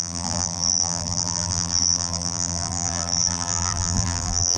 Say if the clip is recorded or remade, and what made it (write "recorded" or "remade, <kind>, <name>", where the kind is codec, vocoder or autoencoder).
remade, vocoder, BigVGAN v2